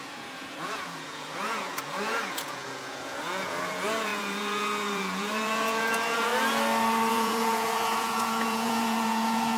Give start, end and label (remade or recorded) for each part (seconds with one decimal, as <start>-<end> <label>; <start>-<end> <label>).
0.0-6.3 remade; 6.3-7.1 recorded; 7.1-9.6 remade